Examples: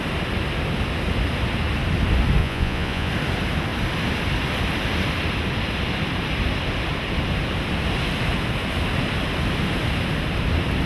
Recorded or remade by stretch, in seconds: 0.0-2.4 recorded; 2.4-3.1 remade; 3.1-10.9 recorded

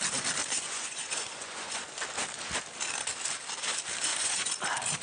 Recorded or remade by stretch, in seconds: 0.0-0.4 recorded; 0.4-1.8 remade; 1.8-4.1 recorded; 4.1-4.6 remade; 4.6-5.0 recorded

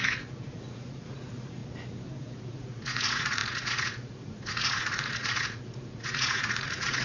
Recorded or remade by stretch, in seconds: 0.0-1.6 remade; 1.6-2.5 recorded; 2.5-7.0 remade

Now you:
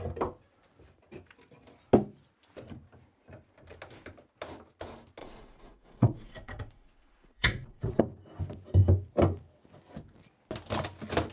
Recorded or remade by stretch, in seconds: 0.0-5.2 recorded; 5.2-8.0 remade; 8.0-11.3 recorded

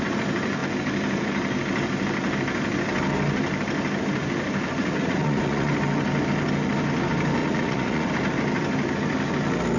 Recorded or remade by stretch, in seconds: 0.0-4.8 recorded; 4.8-5.7 remade; 5.7-7.4 recorded; 7.4-8.1 remade; 8.1-9.8 recorded

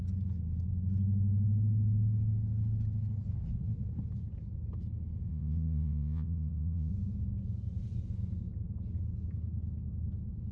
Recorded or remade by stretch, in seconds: 0.0-5.3 recorded; 5.3-6.9 remade; 6.9-10.5 recorded

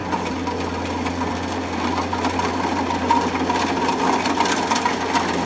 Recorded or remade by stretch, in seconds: 0.0-5.5 recorded

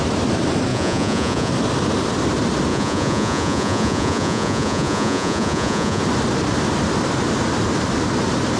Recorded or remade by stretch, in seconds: 0.0-0.7 recorded; 0.7-1.5 remade; 1.5-2.7 recorded; 2.7-6.0 remade; 6.0-8.6 recorded